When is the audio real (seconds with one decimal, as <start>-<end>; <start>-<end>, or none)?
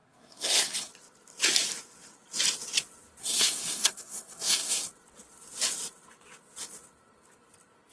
0.9-3.2; 4.9-7.9